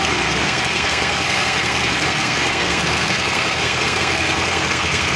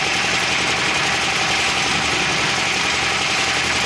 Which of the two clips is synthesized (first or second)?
first